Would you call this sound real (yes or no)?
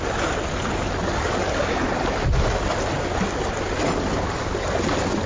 yes